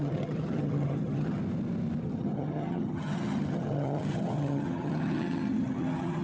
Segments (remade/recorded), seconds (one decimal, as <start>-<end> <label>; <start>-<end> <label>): 0.0-1.4 remade; 1.4-2.0 recorded; 2.0-6.2 remade